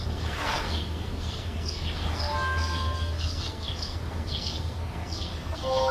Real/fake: fake